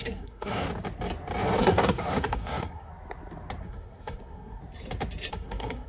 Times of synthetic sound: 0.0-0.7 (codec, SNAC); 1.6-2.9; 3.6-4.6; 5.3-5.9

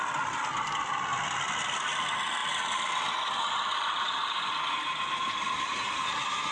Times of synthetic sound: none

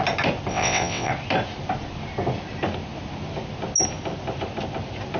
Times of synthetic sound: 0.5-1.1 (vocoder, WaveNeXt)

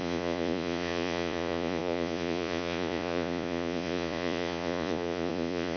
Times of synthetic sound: 0.0-5.8 (vocoder, Vocos)